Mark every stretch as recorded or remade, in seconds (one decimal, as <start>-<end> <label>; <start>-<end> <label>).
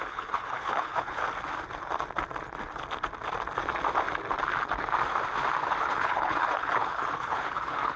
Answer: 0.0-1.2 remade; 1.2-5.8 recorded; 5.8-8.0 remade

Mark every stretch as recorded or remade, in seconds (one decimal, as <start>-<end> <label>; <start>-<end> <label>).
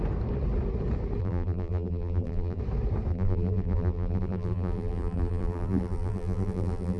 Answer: 0.0-1.2 recorded; 1.2-2.6 remade; 2.6-3.1 recorded; 3.1-7.0 remade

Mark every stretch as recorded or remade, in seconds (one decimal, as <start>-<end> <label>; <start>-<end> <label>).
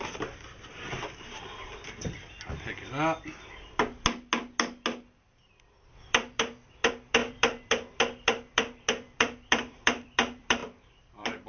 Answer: 0.0-0.7 remade; 0.7-5.9 recorded; 5.9-11.5 remade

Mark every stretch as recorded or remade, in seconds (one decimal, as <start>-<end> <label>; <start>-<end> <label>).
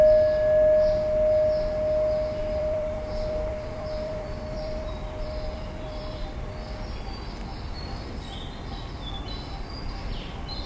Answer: 0.0-2.4 recorded; 2.4-6.5 remade; 6.5-10.7 recorded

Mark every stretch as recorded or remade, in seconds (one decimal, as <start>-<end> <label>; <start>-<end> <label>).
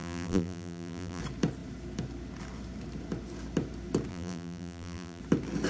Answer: 0.0-1.2 remade; 1.2-4.1 recorded; 4.1-5.2 remade; 5.2-5.7 recorded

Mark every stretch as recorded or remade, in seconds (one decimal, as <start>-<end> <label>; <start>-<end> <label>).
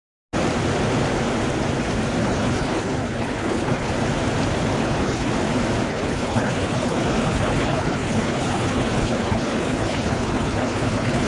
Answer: 0.0-2.2 recorded; 2.2-3.9 remade; 3.9-4.8 recorded; 4.8-5.3 remade; 5.3-5.9 recorded; 5.9-11.3 remade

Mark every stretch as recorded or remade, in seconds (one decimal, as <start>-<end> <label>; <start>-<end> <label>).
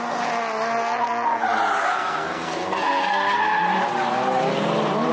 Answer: 0.0-1.9 recorded; 1.9-3.4 remade; 3.4-5.1 recorded